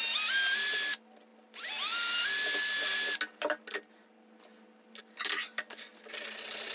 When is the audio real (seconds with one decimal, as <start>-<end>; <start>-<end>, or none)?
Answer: 0.0-6.7

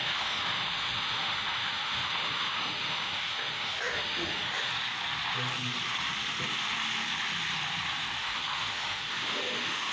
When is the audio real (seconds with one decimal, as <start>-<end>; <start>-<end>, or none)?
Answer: 4.7-8.2

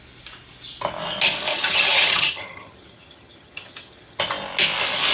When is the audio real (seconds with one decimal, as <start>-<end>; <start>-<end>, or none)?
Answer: 0.0-1.5; 4.2-5.1

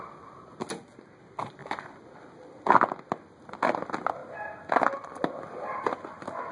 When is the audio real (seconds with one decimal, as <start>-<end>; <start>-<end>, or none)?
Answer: 0.0-1.6; 2.1-6.5

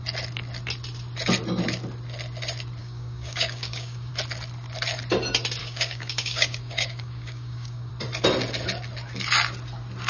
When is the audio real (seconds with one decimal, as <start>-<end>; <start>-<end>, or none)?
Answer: 0.0-2.8; 4.1-5.6; 7.9-10.1

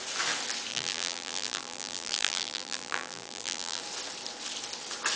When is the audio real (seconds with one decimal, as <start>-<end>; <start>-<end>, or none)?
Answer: 0.0-0.7; 3.8-5.2